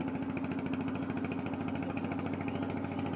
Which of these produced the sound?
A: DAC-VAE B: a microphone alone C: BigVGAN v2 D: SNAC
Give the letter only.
B